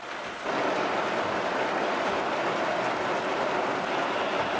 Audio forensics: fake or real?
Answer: real